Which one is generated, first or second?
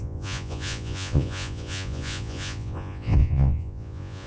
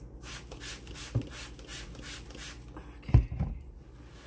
first